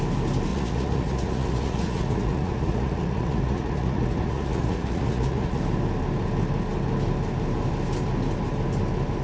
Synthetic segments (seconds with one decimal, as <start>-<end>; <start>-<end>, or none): 0.5-5.6